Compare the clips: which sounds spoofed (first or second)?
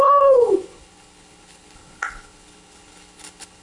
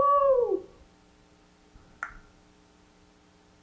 first